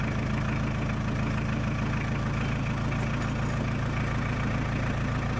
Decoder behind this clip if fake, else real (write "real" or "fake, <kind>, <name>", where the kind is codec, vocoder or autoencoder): real